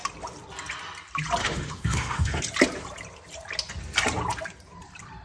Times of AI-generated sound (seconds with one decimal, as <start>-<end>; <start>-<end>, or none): 1.4-2.4